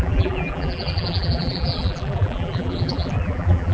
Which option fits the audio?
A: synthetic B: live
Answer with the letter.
A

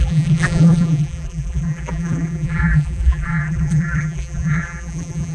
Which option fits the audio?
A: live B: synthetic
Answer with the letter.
B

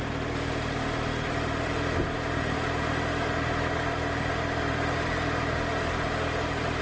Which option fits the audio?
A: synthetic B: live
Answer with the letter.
B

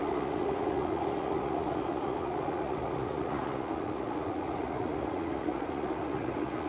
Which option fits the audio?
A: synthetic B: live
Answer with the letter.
A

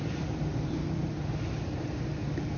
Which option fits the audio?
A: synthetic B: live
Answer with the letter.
B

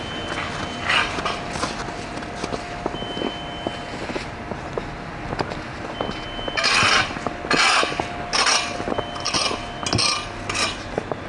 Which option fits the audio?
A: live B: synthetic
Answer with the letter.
A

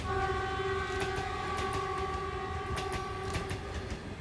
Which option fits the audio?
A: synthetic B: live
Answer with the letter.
B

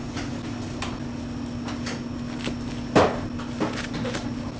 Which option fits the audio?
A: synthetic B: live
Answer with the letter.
B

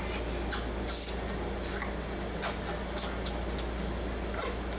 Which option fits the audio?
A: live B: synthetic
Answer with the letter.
A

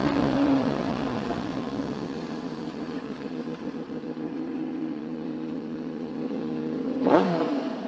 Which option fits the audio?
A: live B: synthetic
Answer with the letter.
B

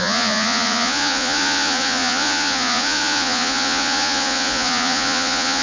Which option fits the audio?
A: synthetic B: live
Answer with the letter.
A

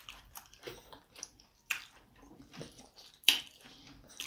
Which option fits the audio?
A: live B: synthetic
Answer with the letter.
B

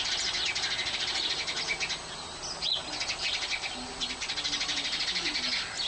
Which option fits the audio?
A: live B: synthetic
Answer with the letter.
A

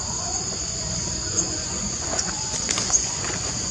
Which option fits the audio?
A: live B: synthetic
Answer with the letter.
B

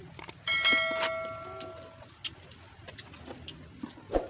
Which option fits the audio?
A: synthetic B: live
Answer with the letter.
B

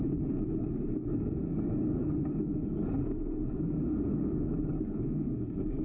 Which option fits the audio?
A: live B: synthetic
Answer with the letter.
B